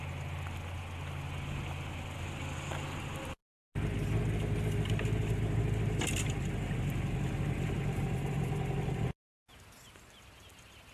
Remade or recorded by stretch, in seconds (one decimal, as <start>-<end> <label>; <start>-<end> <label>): 0.0-10.9 recorded